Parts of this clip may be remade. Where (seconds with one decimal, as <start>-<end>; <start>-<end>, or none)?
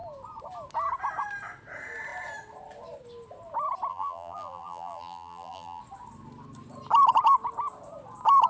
3.9-5.8